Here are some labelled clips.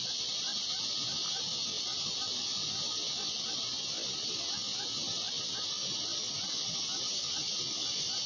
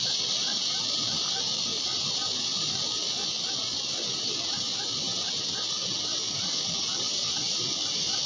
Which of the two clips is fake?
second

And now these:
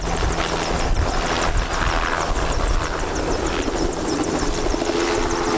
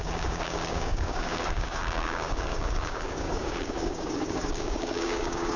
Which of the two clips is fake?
second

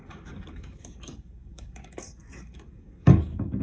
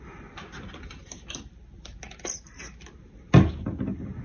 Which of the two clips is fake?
first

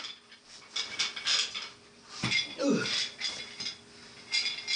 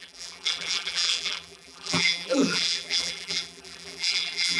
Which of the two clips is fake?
second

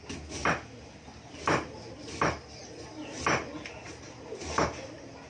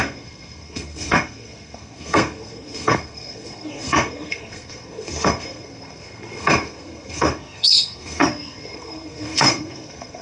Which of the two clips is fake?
second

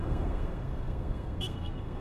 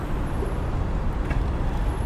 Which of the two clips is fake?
first